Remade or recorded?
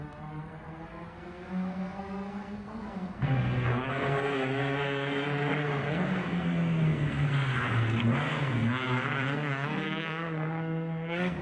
remade